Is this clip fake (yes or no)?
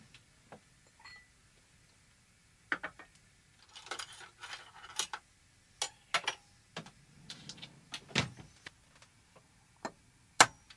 no